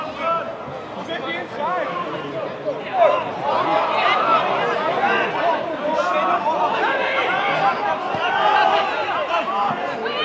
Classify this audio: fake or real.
real